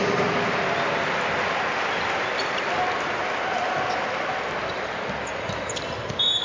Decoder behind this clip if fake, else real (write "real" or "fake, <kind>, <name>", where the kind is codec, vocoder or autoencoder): real